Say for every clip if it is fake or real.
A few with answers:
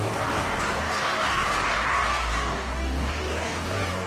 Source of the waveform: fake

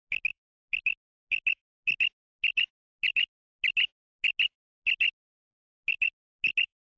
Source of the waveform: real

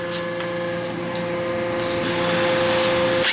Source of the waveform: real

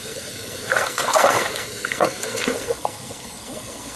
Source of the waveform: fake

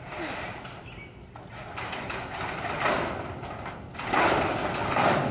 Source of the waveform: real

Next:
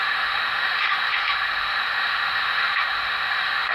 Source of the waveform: fake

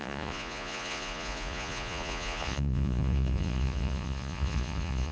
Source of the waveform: fake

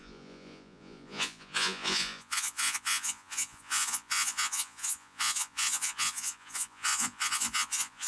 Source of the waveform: fake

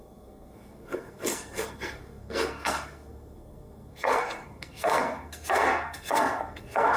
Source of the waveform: fake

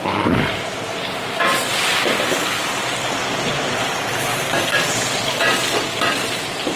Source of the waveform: fake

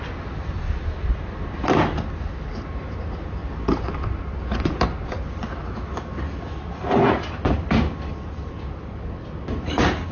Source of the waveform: real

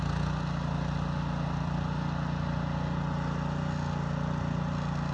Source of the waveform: real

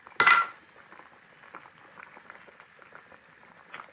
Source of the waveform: real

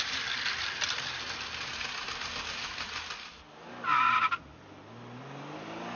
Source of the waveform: real